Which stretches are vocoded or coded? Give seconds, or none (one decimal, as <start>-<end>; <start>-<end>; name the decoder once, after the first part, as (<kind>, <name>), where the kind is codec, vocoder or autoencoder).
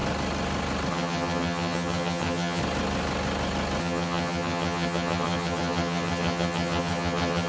0.9-2.6 (vocoder, HiFi-GAN); 3.8-7.5